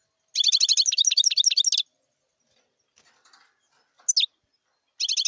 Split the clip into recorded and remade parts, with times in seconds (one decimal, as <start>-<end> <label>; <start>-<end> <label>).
0.0-5.3 recorded